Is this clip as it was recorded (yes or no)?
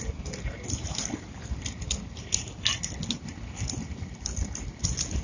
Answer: yes